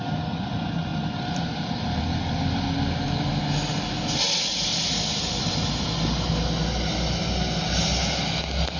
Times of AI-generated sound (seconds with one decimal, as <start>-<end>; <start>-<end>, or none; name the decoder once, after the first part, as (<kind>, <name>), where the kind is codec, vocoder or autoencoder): 0.9-2.0 (vocoder, BigVGAN v2); 4.7-5.4